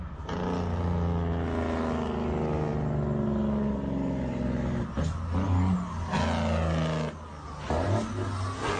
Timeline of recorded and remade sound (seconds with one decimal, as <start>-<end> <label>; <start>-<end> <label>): 0.0-8.8 recorded